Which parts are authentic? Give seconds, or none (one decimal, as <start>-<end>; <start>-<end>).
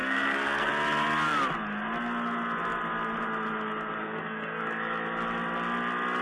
0.7-4.0; 4.6-6.2